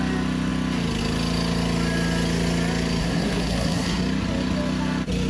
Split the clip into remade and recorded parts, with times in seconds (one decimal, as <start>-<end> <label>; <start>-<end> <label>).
0.0-3.0 recorded; 3.0-4.0 remade; 4.0-5.3 recorded